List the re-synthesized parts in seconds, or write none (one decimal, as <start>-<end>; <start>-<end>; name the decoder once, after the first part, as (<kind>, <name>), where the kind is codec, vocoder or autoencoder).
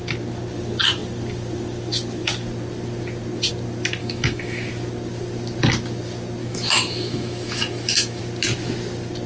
4.0-4.7 (autoencoder, DAC-VAE); 6.4-8.2